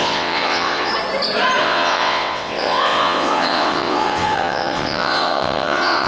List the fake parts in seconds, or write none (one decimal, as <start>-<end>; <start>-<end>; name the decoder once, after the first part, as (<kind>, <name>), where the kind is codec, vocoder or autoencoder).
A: 0.0-0.9 (vocoder, WaveNeXt); 1.6-6.1